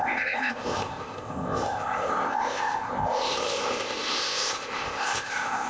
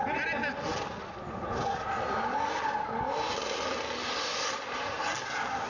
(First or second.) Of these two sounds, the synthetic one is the first